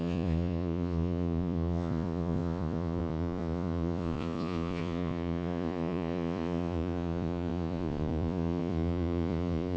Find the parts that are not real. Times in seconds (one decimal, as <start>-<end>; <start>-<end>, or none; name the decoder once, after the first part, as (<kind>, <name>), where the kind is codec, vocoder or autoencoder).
0.0-9.8 (vocoder, Vocos)